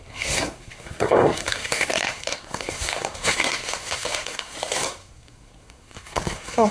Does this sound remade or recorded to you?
remade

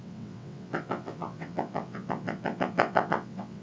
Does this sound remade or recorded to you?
remade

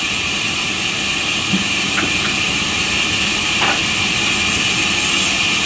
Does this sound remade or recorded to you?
recorded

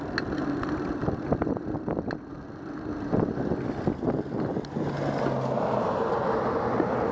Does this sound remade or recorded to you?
recorded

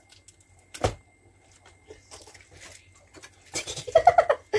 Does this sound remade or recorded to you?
recorded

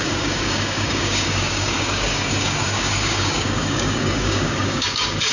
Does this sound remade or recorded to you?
remade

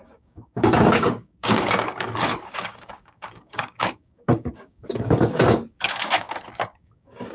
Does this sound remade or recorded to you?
remade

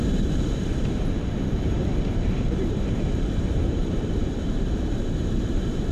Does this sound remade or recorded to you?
remade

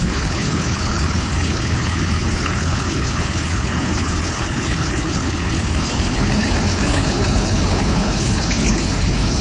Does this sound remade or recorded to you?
remade